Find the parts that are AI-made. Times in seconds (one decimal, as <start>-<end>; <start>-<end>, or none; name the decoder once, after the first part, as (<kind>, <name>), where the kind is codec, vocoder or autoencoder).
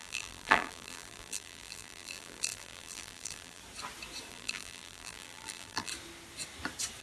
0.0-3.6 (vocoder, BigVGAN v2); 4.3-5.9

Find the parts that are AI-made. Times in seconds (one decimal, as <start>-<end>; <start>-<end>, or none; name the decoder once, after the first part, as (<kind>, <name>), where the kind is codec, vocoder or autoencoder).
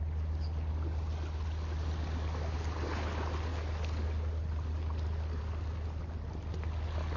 none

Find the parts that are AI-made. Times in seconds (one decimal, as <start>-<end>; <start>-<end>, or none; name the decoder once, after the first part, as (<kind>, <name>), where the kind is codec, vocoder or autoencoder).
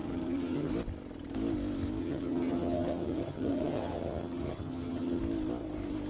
0.0-0.7 (vocoder, HiFi-GAN); 2.0-5.2